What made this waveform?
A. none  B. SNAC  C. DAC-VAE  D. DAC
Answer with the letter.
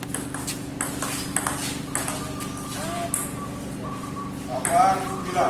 A